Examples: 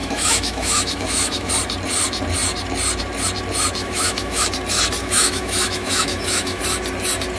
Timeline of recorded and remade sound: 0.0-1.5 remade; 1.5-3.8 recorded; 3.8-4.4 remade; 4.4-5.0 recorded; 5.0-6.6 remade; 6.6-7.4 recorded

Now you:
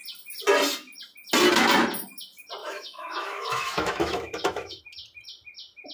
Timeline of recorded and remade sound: 0.0-2.6 recorded; 2.6-4.8 remade; 4.8-5.9 recorded

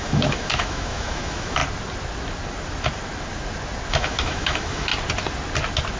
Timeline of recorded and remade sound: 0.0-1.6 remade; 1.6-3.9 recorded; 3.9-4.9 remade; 4.9-6.0 recorded

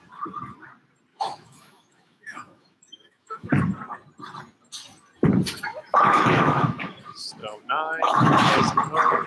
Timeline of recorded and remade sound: 0.0-1.1 recorded; 1.1-3.5 remade; 3.5-5.7 recorded; 5.7-7.0 remade; 7.0-7.4 recorded; 7.4-8.5 remade; 8.5-9.3 recorded

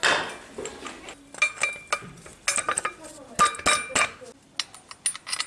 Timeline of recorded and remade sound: 0.0-5.5 recorded

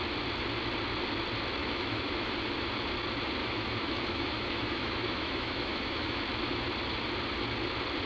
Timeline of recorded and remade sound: 0.0-1.6 recorded; 1.6-2.3 remade; 2.3-3.4 recorded; 3.4-6.2 remade; 6.2-8.1 recorded

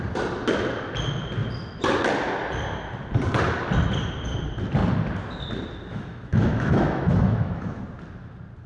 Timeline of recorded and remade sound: 0.0-5.9 recorded; 5.9-7.8 remade; 7.8-8.7 recorded